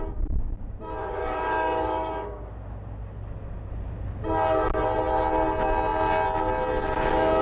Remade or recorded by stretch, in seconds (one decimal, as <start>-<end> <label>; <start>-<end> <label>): 0.0-1.0 recorded; 1.0-2.4 remade; 2.4-7.4 recorded